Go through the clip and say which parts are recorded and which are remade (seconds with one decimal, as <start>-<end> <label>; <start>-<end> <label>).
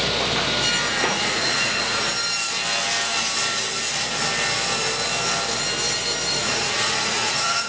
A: 0.0-0.9 recorded; 0.9-2.1 remade; 2.1-6.4 recorded; 6.4-7.7 remade